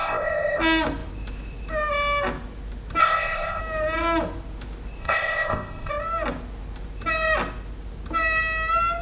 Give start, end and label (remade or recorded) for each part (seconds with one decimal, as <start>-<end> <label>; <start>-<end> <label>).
0.0-0.6 remade; 0.6-3.0 recorded; 3.0-3.6 remade; 3.6-5.0 recorded; 5.0-5.9 remade; 5.9-9.0 recorded